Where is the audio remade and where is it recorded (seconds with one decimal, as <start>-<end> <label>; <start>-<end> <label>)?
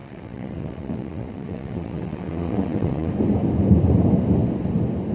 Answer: 0.0-3.1 remade; 3.1-5.1 recorded